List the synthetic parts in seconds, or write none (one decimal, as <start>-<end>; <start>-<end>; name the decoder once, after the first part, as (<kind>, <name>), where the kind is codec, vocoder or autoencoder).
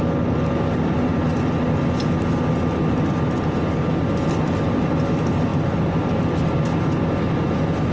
none